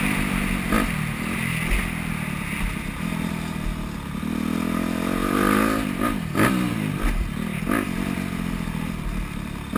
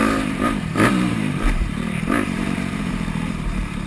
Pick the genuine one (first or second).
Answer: first